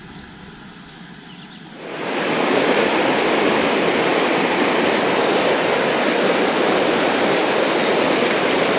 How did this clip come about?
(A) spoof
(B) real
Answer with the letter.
B